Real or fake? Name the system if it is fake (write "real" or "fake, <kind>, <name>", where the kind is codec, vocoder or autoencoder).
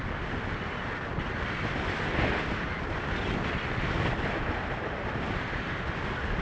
real